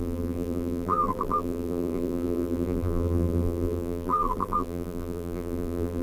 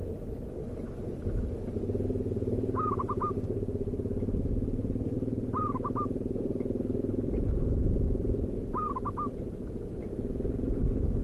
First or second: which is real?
second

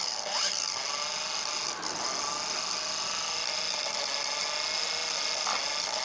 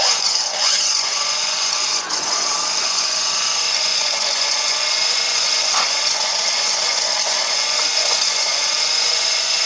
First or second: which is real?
first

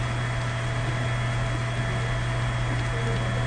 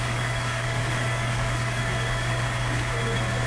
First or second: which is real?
first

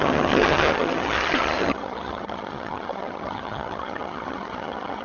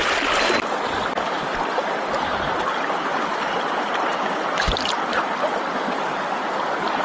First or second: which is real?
second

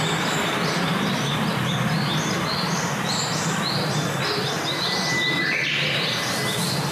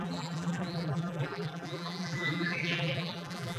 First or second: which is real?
first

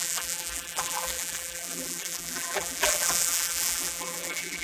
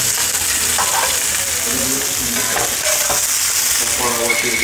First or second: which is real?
second